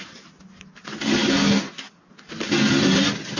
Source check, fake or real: real